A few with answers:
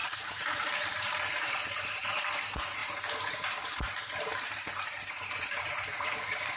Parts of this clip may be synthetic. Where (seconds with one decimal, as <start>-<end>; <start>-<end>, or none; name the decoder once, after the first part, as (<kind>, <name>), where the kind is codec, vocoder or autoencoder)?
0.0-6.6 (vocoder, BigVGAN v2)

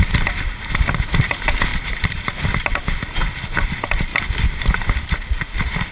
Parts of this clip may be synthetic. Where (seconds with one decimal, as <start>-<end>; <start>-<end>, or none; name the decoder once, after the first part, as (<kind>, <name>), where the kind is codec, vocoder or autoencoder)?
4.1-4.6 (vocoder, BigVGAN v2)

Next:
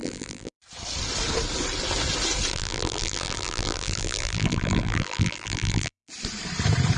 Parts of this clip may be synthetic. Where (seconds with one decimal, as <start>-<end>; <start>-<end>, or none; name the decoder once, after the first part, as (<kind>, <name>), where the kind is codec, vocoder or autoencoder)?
0.0-0.6 (vocoder, BigVGAN v2); 2.5-6.1

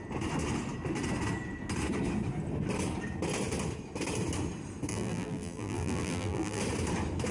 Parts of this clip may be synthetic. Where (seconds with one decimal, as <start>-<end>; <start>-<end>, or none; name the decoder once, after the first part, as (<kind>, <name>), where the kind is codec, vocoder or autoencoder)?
4.9-6.6 (vocoder, BigVGAN v2)

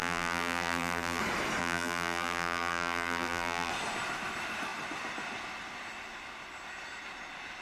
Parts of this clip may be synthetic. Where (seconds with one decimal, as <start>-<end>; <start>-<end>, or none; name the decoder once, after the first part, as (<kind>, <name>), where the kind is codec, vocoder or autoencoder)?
0.0-1.2 (vocoder, BigVGAN v2); 1.6-3.7

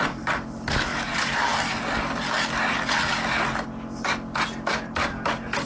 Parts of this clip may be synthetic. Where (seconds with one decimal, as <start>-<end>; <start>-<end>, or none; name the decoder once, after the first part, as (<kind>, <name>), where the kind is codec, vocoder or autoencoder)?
0.9-1.8 (vocoder, BigVGAN v2)